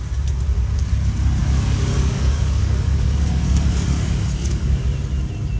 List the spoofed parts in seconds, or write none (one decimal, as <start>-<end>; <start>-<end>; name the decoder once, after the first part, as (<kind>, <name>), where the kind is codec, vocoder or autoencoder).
1.4-4.8 (codec, DAC)